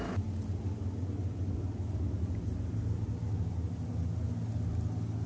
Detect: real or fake real